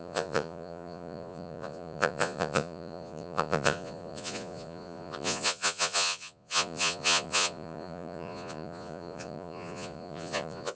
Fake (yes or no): yes